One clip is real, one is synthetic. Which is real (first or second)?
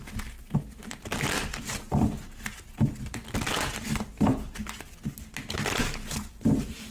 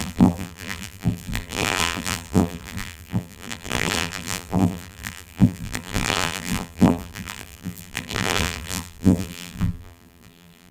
first